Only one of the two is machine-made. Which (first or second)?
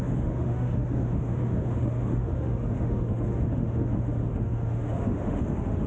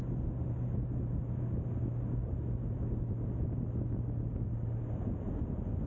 first